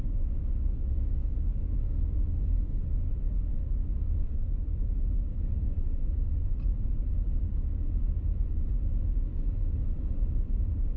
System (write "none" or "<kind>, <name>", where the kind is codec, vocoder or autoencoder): none